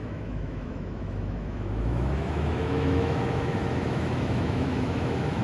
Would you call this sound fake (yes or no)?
yes